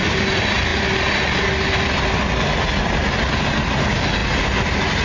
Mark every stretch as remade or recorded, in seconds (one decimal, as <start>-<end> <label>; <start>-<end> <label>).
0.0-5.0 recorded